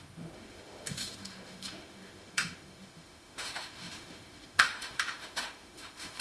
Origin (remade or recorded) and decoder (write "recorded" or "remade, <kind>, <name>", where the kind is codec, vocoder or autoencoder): remade, autoencoder, DAC-VAE